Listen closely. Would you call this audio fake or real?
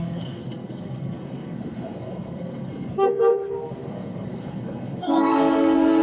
fake